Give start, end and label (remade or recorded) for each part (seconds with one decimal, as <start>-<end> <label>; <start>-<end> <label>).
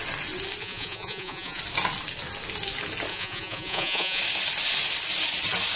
0.0-0.6 recorded; 0.6-1.6 remade; 1.6-3.1 recorded; 3.1-4.2 remade; 4.2-5.8 recorded